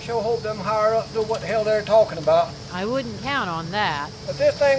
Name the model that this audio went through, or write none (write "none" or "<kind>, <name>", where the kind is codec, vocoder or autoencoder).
none